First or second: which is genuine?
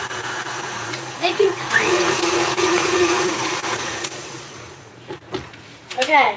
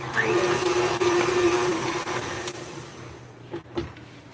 second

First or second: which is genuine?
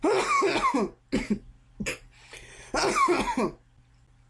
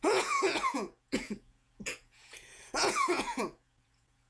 first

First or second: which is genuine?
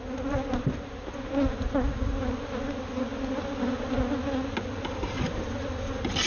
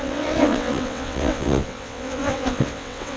first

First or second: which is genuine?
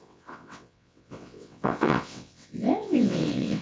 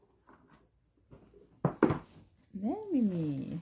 second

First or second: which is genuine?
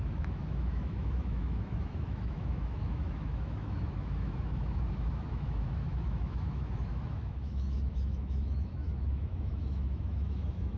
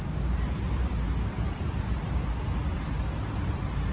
second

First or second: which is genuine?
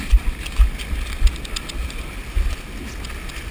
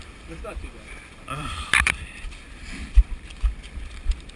first